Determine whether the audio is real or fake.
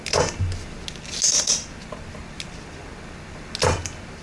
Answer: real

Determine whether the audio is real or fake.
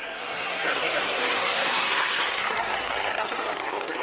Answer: fake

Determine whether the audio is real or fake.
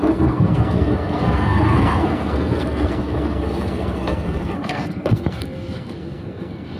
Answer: fake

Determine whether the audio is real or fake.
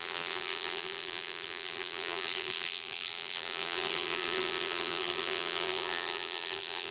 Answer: fake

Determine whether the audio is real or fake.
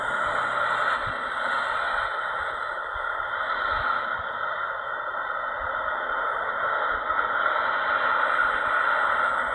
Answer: real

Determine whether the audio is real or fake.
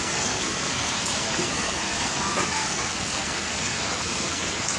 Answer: fake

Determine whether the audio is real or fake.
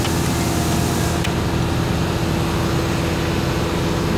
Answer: real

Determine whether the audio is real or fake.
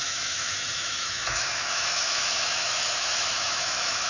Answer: fake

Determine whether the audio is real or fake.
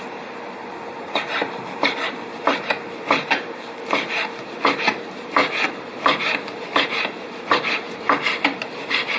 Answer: fake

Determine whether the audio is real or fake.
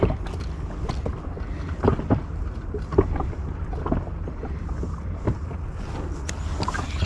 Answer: real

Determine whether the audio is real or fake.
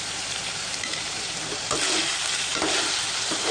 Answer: fake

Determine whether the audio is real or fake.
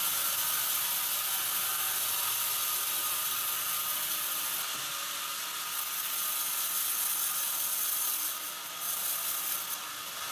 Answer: real